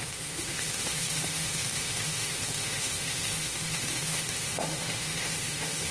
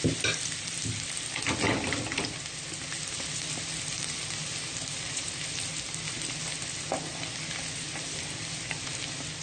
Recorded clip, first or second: second